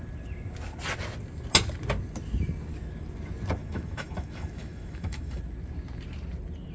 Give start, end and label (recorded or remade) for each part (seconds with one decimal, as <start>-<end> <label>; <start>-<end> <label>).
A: 0.0-3.6 recorded; 3.6-5.4 remade; 5.4-6.7 recorded